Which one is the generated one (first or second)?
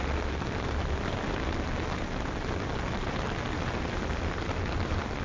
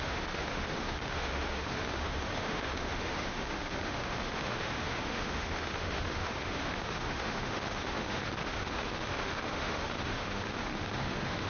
second